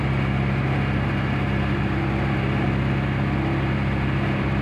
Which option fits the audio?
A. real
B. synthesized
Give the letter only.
A